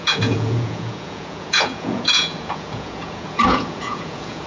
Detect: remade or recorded remade